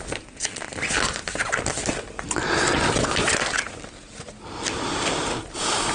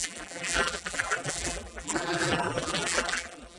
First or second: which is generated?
second